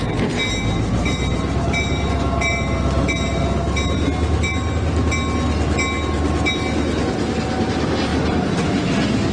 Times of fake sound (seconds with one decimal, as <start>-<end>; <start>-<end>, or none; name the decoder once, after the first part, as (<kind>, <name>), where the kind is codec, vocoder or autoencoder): none